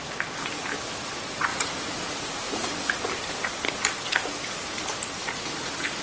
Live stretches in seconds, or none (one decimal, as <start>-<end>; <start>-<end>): 0.0-1.5; 2.9-5.2